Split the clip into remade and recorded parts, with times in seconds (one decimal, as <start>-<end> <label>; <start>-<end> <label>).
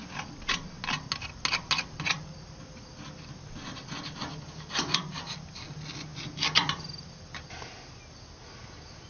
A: 0.0-9.1 recorded